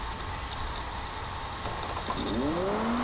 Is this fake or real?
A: real